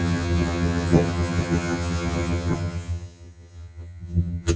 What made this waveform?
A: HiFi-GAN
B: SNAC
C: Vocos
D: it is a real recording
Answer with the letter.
A